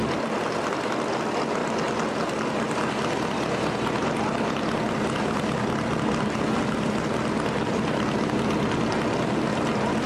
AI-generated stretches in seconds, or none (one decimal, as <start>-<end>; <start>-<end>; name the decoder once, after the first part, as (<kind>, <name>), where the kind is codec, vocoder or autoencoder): none